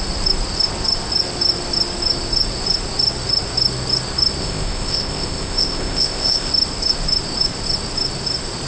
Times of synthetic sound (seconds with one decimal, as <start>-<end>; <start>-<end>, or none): 4.4-6.5